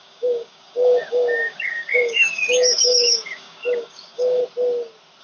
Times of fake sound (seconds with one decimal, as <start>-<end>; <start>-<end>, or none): 0.0-4.4